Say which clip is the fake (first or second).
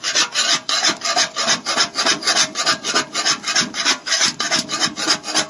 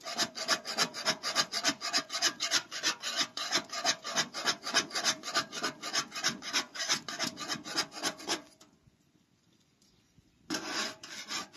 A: second